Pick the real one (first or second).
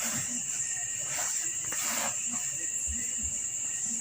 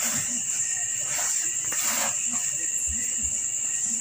second